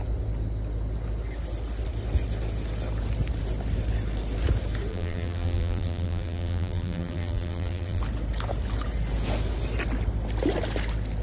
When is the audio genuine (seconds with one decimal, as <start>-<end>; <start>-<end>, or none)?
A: 0.0-4.9; 8.0-11.2